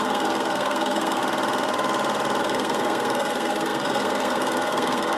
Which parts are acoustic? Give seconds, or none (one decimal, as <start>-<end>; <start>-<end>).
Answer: 1.2-2.4